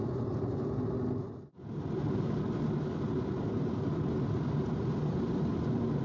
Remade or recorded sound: recorded